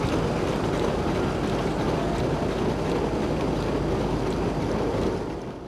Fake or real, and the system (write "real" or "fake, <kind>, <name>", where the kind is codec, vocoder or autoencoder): real